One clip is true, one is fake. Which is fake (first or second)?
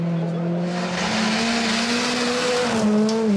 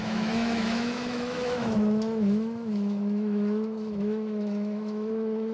second